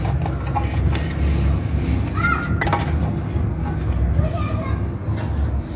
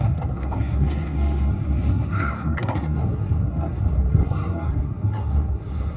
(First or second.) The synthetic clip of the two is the second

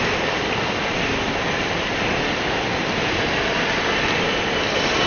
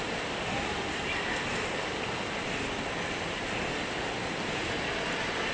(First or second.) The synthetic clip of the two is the first